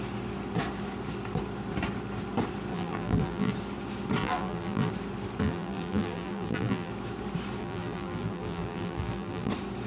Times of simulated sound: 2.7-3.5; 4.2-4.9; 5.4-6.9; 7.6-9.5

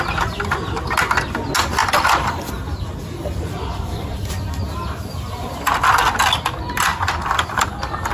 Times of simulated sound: 1.8-4.3; 6.9-8.1

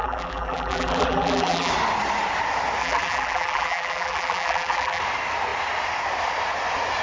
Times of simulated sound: 0.0-1.7; 2.8-5.0

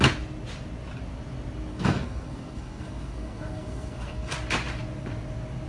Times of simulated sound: 1.7-4.3

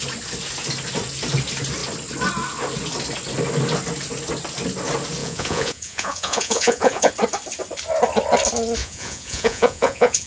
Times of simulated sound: 5.2-7.1; 8.8-10.3

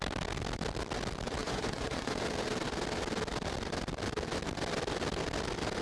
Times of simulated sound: 1.4-2.1

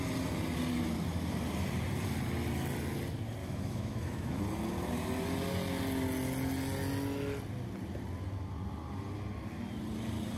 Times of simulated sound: 3.4-4.4

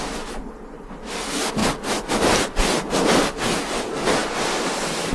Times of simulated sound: none